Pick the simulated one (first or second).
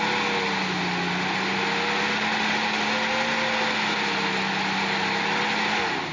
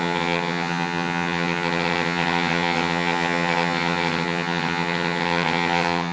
second